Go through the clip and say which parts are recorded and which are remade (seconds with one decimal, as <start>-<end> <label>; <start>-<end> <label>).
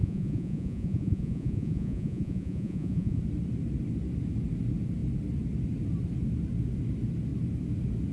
0.0-3.2 remade; 3.2-8.1 recorded